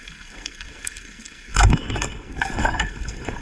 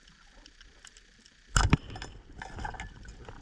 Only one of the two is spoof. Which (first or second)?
first